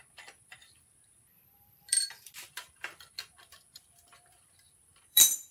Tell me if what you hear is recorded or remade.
remade